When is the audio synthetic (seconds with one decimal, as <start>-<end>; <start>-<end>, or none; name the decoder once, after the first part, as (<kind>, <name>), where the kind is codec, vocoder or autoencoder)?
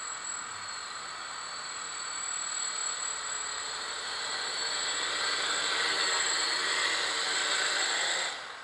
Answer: none